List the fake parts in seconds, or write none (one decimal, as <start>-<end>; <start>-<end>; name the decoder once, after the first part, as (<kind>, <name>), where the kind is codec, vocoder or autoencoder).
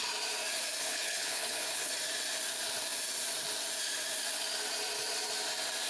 0.8-1.9 (codec, HILCodec)